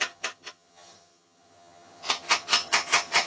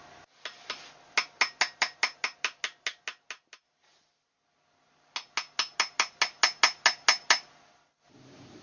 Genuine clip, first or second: second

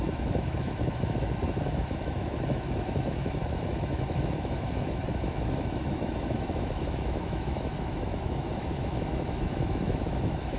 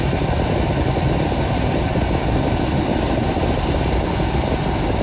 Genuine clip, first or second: second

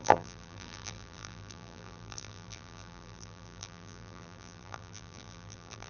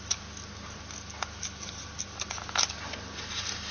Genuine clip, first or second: second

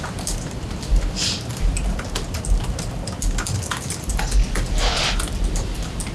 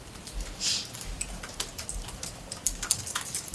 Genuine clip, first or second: second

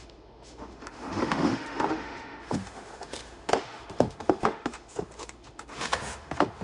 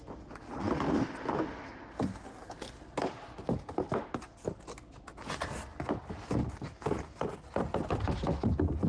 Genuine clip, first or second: second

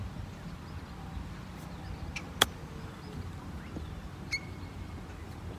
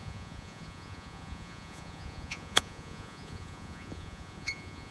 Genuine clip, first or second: first